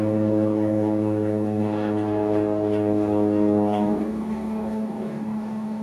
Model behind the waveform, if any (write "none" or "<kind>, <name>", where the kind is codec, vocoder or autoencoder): codec, DAC